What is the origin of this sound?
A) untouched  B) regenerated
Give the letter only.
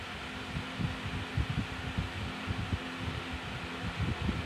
A